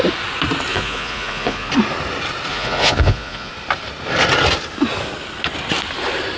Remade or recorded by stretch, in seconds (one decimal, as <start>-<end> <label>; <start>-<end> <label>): 0.0-0.7 recorded; 0.7-1.7 remade; 1.7-2.5 recorded; 2.5-3.5 remade; 3.5-6.4 recorded